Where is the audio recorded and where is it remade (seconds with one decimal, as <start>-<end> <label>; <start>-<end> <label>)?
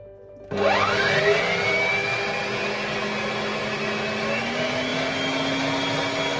0.0-6.4 recorded